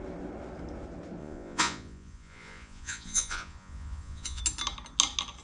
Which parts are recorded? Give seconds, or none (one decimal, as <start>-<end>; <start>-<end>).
0.0-1.2; 4.4-5.4

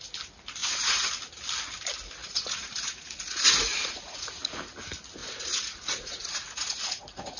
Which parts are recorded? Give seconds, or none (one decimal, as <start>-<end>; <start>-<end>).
0.0-0.6; 1.1-2.2; 4.6-5.2

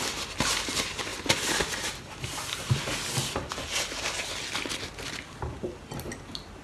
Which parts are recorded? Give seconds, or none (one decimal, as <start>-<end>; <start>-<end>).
0.0-6.6

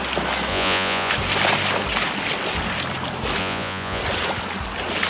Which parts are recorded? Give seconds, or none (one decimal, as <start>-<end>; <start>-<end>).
0.0-0.5; 1.1-3.4; 4.0-5.1

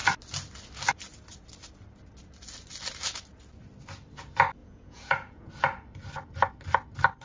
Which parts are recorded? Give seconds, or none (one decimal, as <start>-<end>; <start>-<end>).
0.0-4.6; 5.5-7.2

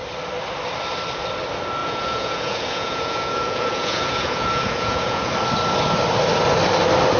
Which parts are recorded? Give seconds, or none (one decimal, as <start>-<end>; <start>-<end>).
0.0-1.8; 5.3-7.2

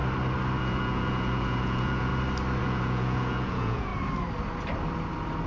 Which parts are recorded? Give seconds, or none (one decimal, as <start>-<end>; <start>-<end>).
0.0-0.6; 2.1-2.6; 3.9-5.5

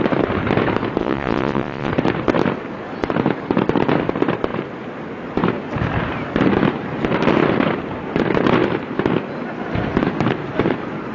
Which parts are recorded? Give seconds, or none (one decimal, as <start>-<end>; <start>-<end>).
0.0-1.0; 1.9-11.1